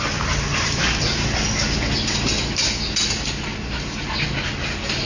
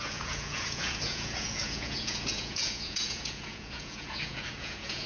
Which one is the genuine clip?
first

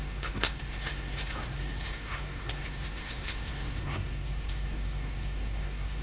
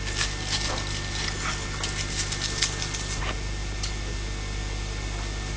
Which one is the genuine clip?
second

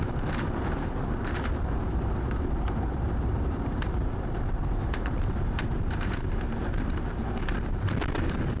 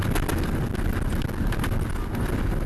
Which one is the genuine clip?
second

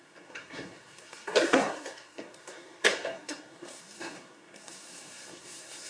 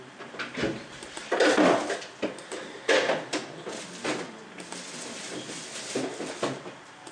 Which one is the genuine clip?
second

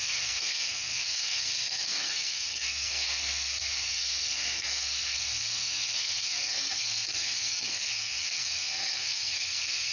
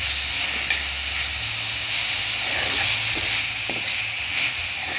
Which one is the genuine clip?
second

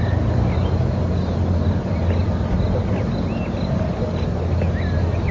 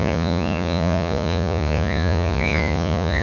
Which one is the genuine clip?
first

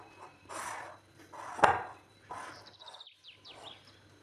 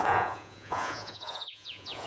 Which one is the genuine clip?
first